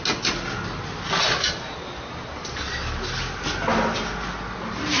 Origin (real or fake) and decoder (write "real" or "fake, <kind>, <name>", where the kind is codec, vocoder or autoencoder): real